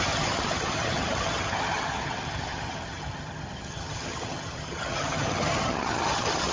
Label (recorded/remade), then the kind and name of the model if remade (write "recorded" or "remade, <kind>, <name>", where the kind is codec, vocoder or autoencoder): remade, vocoder, HiFi-GAN